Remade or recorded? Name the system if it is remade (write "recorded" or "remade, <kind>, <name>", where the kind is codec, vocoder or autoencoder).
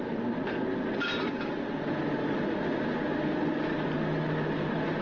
recorded